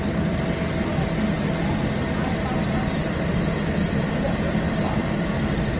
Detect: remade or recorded recorded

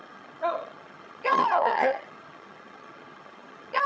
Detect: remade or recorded remade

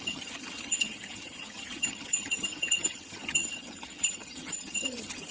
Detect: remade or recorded remade